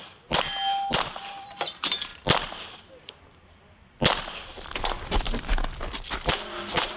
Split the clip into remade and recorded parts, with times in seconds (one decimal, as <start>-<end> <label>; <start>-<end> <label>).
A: 0.0-2.1 remade; 2.1-6.3 recorded; 6.3-7.0 remade